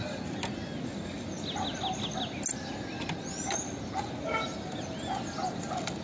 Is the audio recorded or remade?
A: recorded